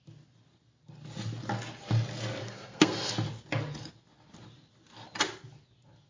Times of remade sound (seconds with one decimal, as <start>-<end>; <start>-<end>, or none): 2.4-3.1